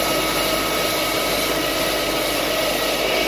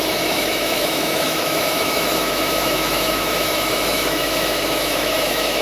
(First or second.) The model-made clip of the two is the second